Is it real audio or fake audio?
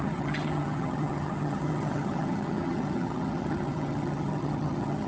fake